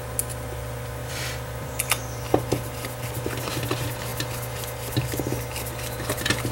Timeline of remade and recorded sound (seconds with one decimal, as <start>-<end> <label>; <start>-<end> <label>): 0.0-1.0 recorded; 1.0-2.0 remade; 2.0-6.5 recorded